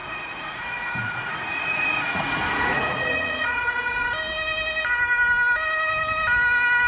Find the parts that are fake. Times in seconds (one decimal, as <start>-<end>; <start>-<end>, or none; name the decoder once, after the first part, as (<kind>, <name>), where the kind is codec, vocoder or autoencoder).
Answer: 0.0-4.1 (vocoder, Vocos)